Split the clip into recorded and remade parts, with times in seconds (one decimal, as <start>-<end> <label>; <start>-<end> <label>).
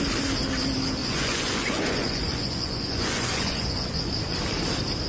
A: 0.0-1.0 recorded; 1.0-4.1 remade; 4.1-5.1 recorded